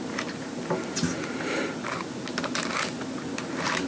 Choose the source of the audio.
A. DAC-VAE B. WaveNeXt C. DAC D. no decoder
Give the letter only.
D